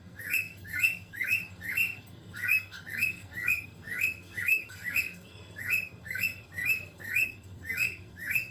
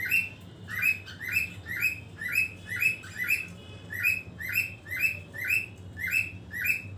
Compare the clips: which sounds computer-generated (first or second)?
first